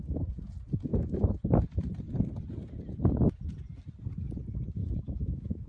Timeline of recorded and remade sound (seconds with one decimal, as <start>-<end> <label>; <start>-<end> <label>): 0.0-4.8 recorded; 4.8-5.7 remade